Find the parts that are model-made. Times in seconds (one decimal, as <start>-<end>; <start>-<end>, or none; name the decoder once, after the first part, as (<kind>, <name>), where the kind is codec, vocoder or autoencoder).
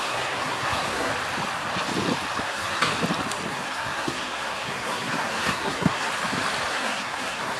0.0-1.1 (codec, SNAC); 2.4-2.9; 3.5-6.1; 6.7-7.6